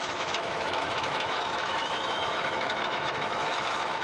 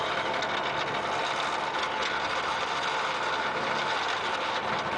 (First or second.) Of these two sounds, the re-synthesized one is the first